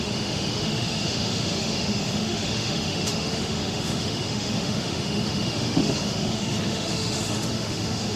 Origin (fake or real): fake